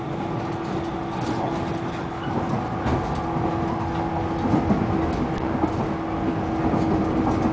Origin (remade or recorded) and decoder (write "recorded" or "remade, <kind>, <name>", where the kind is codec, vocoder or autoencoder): recorded